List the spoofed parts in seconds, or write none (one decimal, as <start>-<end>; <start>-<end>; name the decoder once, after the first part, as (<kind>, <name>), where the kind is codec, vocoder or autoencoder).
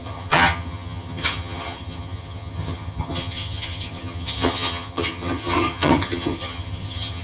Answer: 0.0-7.2 (vocoder, HiFi-GAN)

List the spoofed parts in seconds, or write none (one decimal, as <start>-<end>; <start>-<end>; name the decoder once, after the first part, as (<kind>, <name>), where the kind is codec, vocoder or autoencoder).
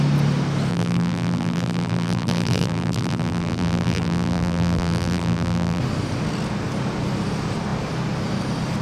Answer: 0.7-5.8 (vocoder, BigVGAN v2)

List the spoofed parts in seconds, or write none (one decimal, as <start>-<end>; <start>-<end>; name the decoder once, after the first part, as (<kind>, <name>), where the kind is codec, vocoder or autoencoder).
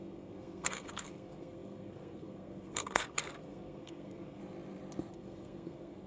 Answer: 0.0-4.4 (codec, SNAC); 5.1-6.1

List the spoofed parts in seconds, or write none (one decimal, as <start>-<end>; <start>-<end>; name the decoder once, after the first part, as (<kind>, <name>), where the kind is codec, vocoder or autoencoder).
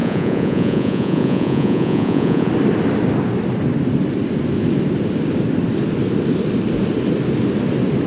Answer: 0.0-2.5 (vocoder, Vocos)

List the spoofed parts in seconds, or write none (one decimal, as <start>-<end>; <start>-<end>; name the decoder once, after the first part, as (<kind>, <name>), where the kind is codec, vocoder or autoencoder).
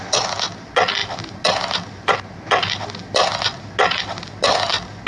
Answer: none